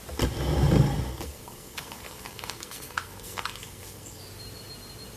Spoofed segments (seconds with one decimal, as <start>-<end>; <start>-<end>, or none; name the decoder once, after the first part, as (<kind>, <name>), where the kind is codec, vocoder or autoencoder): 1.1-4.2 (codec, SNAC)